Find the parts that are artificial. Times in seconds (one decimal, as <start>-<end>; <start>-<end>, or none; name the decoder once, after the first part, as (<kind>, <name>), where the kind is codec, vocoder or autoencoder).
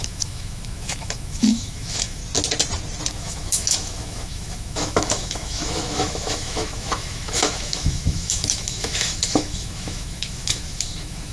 0.0-2.2 (autoencoder, DAC-VAE); 3.1-11.3